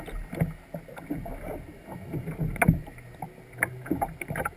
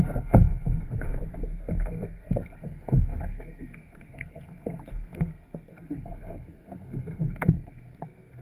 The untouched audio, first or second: first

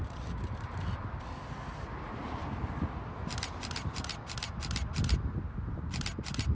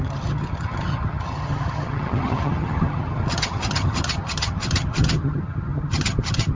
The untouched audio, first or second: first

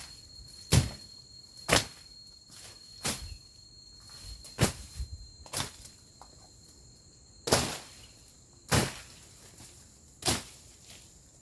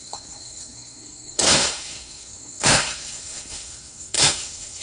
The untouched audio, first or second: first